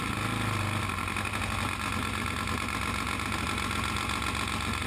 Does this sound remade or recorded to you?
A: recorded